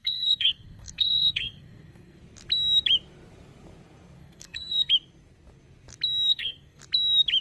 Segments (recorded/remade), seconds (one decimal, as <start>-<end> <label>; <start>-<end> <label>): 0.0-2.2 remade; 2.2-4.2 recorded; 4.2-4.9 remade; 4.9-6.3 recorded; 6.3-6.8 remade; 6.8-7.4 recorded